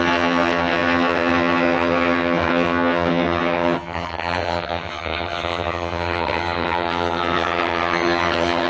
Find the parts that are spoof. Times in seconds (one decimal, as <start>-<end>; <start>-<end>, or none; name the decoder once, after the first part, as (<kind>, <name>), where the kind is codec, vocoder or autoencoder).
0.0-8.7 (vocoder, HiFi-GAN)